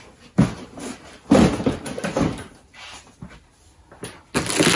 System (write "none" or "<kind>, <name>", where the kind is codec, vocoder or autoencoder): none